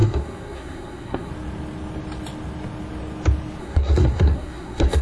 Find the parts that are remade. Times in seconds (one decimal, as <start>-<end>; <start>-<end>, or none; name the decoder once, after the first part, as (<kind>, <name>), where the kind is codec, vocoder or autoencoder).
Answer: 0.0-1.3 (codec, SNAC); 3.6-5.0